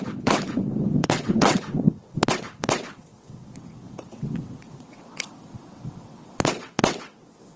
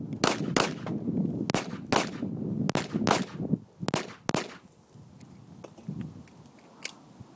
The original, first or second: second